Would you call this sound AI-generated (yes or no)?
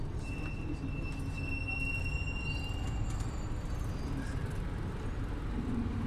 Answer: no